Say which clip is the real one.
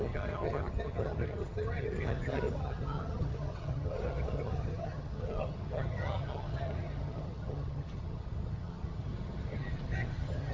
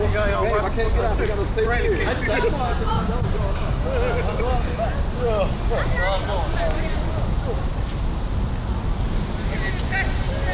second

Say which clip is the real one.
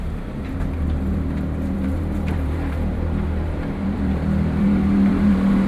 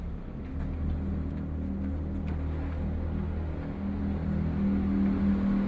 second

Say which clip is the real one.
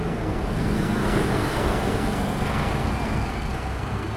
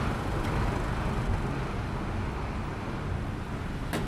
second